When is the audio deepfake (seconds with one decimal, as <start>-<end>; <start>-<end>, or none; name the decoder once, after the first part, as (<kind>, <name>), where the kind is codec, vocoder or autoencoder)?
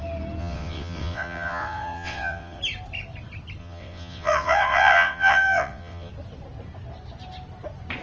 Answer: 0.4-2.6 (vocoder, WaveNeXt); 3.6-6.1